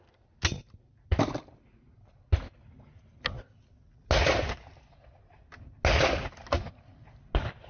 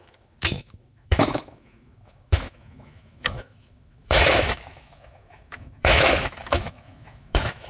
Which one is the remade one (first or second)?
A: second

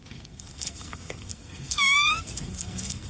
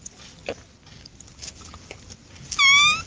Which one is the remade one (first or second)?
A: first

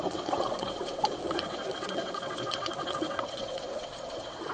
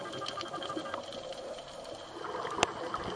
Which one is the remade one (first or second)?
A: first